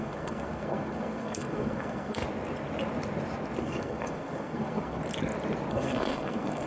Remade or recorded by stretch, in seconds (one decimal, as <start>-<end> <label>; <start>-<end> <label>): 0.0-2.2 remade; 2.2-3.6 recorded; 3.6-5.0 remade; 5.0-5.7 recorded; 5.7-6.7 remade